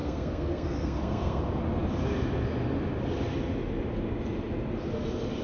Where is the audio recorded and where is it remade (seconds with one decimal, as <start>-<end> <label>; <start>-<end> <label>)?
0.0-1.4 remade; 1.4-5.4 recorded